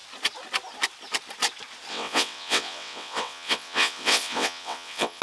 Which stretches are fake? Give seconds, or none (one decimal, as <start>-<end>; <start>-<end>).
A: 1.9-5.2